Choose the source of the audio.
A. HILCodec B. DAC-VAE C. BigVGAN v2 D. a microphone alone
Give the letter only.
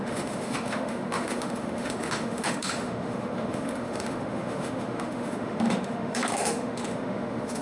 B